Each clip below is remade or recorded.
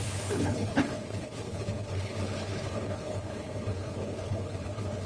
remade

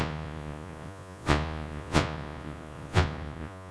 remade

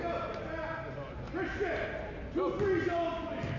recorded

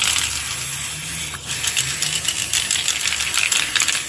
recorded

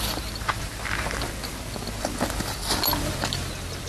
recorded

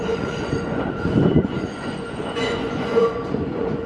remade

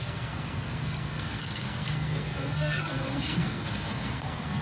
remade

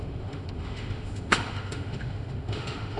remade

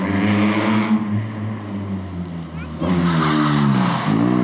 recorded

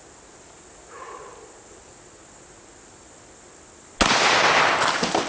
recorded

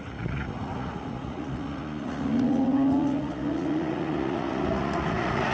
remade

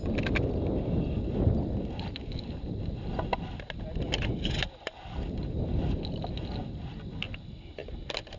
recorded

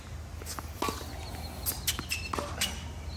recorded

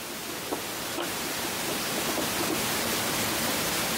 recorded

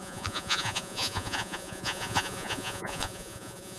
remade